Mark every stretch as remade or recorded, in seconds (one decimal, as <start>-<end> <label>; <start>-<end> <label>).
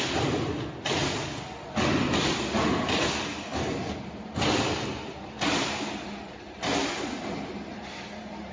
0.0-8.5 recorded